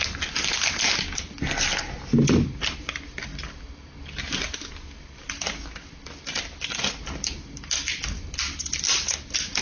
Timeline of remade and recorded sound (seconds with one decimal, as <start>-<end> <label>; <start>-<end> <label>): 0.0-9.6 recorded